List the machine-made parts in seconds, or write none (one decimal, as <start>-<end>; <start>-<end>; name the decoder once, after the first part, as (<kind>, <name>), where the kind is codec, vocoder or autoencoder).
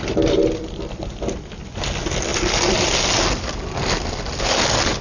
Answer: none